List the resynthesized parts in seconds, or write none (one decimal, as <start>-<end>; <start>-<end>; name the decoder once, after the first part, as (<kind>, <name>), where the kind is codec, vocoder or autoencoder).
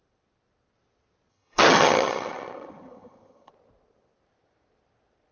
1.3-3.5 (vocoder, HiFi-GAN)